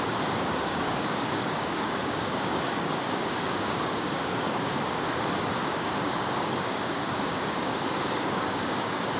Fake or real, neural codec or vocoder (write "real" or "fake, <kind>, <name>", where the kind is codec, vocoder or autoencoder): fake, codec, DAC